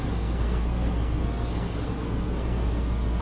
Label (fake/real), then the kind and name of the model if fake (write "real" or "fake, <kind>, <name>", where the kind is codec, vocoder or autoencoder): fake, codec, SNAC